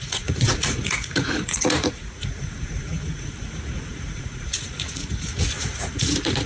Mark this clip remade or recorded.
remade